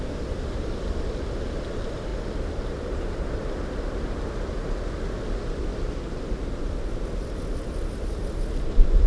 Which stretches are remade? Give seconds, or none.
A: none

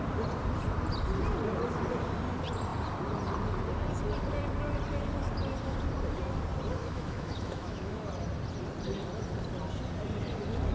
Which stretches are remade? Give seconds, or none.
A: 6.8-8.1 (autoencoder, DAC-VAE)

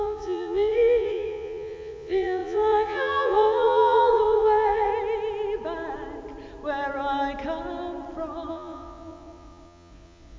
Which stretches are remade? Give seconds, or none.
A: 0.0-4.9 (vocoder, Vocos); 8.5-10.4

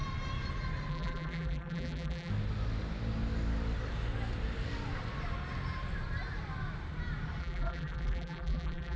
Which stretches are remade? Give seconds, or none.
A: 0.9-2.3 (vocoder, BigVGAN v2); 7.4-9.0

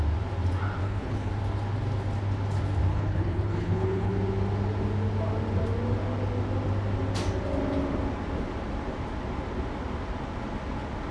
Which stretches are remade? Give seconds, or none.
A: 0.8-1.3 (codec, HILCodec); 2.9-4.1

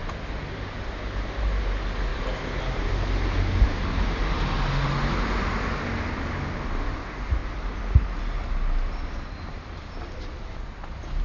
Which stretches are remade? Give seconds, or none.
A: 2.1-2.6 (vocoder, BigVGAN v2); 7.4-8.2